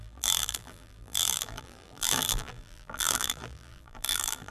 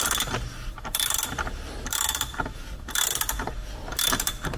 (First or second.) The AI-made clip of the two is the first